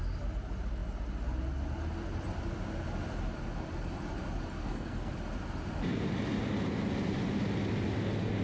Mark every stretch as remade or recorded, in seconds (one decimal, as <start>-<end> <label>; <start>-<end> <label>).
0.0-4.6 recorded; 4.6-5.1 remade; 5.1-8.4 recorded